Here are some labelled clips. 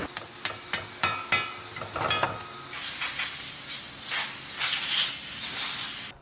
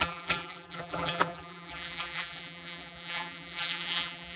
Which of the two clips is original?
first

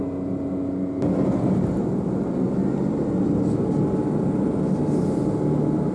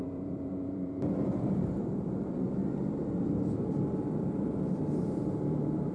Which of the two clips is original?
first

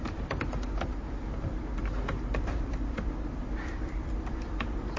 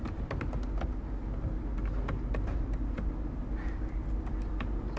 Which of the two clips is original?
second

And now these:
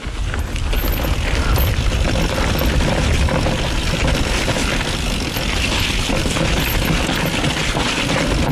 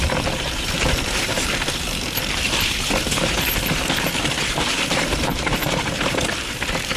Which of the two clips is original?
first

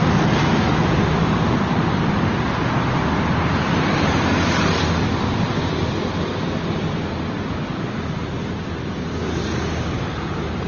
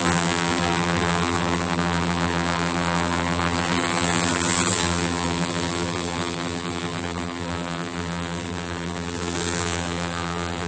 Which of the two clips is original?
first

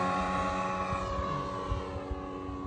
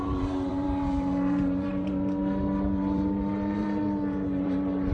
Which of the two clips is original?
first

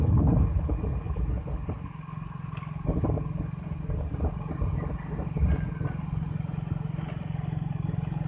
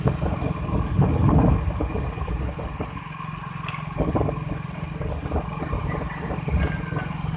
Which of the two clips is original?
first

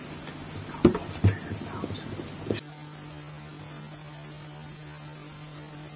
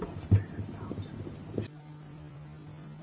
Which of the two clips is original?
first